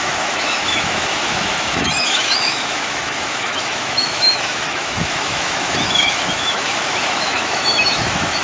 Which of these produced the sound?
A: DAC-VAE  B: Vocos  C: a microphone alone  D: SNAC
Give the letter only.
A